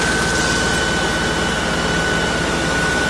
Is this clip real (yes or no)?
yes